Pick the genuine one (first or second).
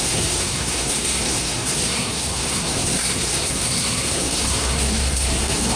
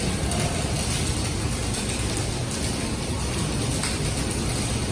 second